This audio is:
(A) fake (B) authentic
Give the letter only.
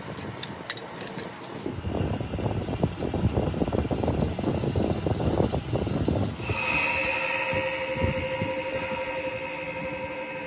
B